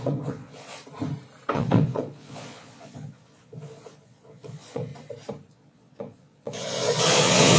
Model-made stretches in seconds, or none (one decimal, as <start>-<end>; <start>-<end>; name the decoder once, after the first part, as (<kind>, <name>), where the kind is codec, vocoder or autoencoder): 0.0-0.8 (vocoder, Vocos); 1.5-4.9; 5.5-7.6